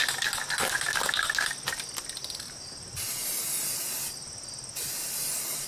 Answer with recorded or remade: recorded